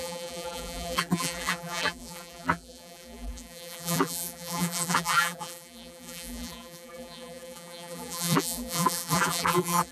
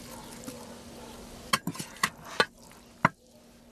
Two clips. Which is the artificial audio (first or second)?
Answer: first